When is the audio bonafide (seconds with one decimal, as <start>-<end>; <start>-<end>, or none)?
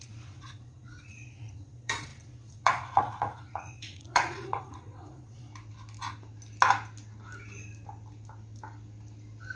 5.5-9.6